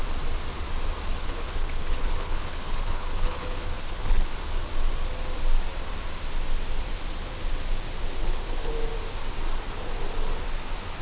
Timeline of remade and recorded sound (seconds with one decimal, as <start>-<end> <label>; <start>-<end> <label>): 0.0-1.1 recorded; 1.1-4.3 remade; 4.3-8.2 recorded; 8.2-8.7 remade; 8.7-11.0 recorded